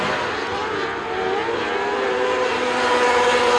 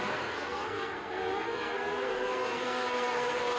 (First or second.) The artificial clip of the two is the second